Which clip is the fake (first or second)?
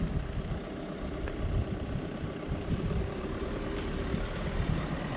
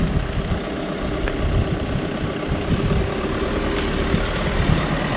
first